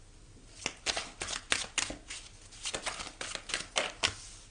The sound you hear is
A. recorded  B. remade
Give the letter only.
A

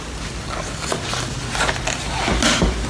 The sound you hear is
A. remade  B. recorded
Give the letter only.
B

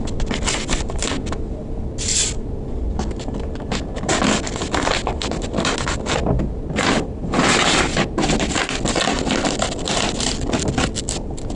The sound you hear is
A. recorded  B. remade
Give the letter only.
A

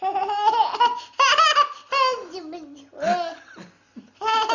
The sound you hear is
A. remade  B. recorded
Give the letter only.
B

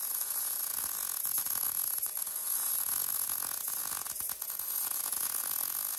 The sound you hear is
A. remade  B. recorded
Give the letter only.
A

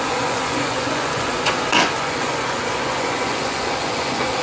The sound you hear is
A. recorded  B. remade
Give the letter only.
B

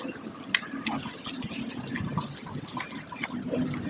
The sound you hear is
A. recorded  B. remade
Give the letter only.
A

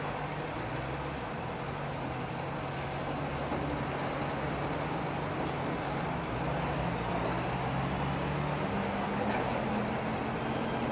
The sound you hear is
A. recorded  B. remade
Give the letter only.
A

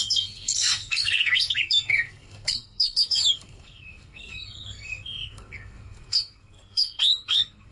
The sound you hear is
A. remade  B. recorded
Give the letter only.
A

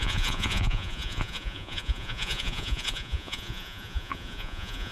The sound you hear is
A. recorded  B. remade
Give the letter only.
B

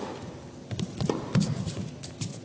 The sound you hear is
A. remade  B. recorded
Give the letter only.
B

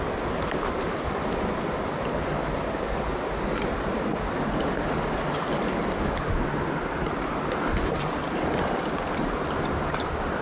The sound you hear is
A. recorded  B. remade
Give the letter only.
A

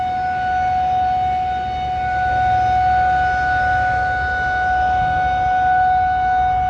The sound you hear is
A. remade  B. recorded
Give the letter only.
B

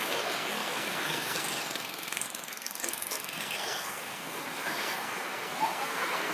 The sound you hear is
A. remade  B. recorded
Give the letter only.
A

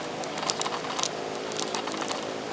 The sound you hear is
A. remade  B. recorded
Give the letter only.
B